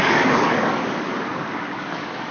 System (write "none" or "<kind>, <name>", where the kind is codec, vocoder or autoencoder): codec, DAC